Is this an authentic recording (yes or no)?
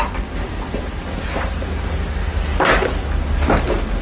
yes